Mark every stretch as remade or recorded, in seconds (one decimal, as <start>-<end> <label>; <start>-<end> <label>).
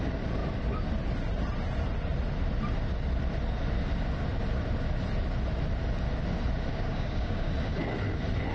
0.0-6.7 recorded; 6.7-7.5 remade; 7.5-8.5 recorded